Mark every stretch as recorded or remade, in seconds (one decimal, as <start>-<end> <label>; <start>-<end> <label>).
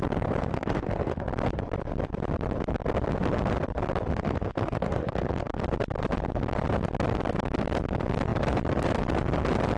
0.0-0.5 recorded; 0.5-1.2 remade; 1.2-4.1 recorded; 4.1-5.6 remade; 5.6-9.8 recorded